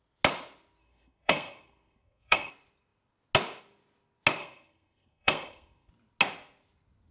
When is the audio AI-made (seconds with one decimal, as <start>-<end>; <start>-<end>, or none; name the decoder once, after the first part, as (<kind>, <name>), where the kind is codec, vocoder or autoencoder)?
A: 0.8-2.5 (codec, SNAC); 4.4-5.9